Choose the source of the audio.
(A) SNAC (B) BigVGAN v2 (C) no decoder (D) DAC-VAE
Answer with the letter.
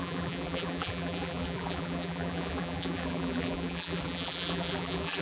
B